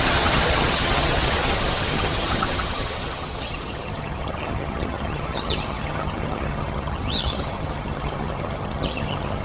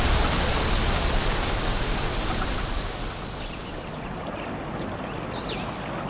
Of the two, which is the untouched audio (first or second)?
second